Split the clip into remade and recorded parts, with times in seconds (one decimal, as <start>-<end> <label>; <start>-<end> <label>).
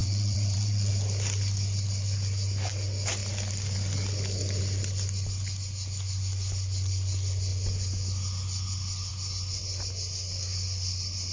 0.0-0.9 remade; 0.9-11.3 recorded